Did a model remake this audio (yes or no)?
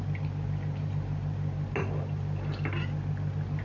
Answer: no